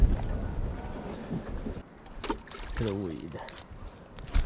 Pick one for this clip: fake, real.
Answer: real